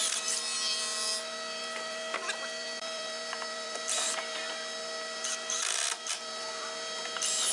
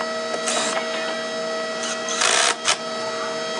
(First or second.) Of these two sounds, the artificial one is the first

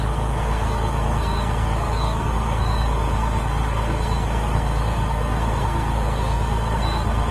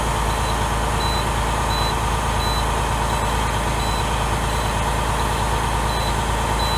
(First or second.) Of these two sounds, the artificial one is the first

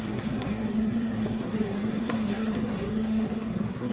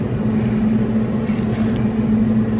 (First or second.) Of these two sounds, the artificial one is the first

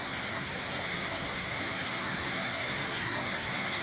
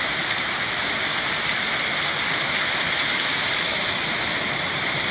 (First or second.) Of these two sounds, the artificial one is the first